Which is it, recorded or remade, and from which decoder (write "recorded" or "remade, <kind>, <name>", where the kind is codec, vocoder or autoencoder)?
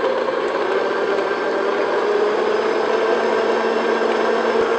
recorded